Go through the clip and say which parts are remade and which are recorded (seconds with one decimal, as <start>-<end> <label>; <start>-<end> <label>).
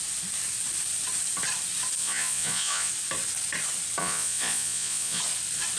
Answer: 0.0-2.0 recorded; 2.0-2.9 remade; 2.9-4.0 recorded; 4.0-5.2 remade; 5.2-5.8 recorded